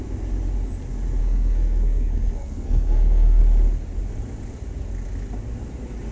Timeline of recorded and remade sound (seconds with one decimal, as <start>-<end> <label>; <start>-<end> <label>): 0.0-1.2 recorded; 1.2-3.4 remade; 3.4-6.1 recorded